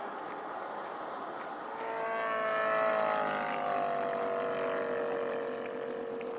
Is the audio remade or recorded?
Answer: recorded